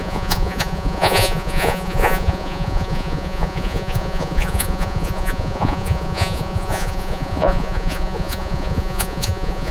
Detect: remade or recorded remade